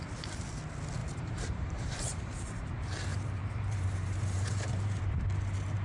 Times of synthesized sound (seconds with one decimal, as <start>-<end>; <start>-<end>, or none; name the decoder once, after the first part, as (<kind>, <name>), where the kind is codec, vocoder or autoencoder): 1.0-2.7 (vocoder, BigVGAN v2); 3.1-5.0